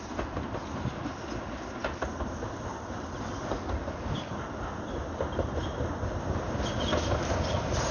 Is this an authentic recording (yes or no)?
yes